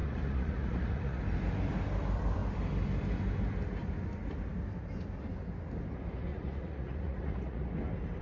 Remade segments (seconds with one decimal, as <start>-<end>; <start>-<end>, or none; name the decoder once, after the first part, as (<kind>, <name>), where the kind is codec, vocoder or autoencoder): 0.0-1.2 (vocoder, Vocos); 6.3-7.7